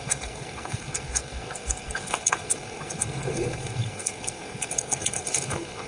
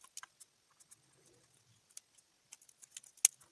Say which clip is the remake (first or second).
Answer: first